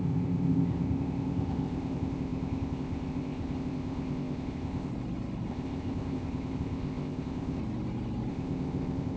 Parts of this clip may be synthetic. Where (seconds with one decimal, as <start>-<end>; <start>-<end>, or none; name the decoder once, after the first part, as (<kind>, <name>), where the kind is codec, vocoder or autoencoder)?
0.0-4.9 (codec, ZipCodec); 5.5-7.6; 8.3-9.2